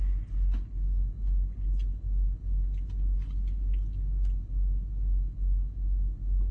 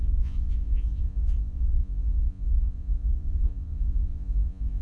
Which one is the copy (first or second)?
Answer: second